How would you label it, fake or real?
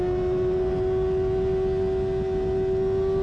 real